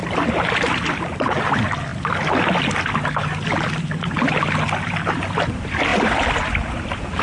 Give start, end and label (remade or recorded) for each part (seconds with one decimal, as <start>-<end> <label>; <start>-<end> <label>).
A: 0.0-1.3 remade; 1.3-1.9 recorded; 1.9-2.6 remade; 2.6-5.9 recorded; 5.9-7.2 remade

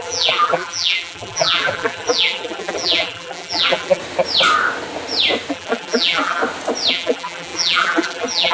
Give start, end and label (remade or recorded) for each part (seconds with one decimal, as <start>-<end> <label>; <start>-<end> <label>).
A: 0.0-4.0 remade; 4.0-5.5 recorded; 5.5-6.4 remade; 6.4-6.9 recorded; 6.9-8.5 remade

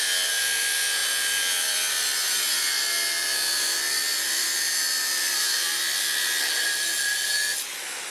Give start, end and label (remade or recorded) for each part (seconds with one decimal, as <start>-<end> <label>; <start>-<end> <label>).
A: 0.0-8.1 recorded

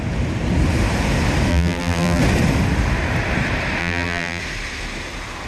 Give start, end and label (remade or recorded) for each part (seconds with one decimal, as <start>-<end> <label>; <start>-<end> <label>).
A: 0.0-1.5 recorded; 1.5-2.2 remade; 2.2-3.8 recorded; 3.8-4.4 remade; 4.4-5.5 recorded